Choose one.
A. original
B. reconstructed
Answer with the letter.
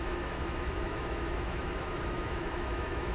B